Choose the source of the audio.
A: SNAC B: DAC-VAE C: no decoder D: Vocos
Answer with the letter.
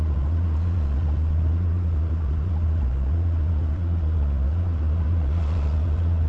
D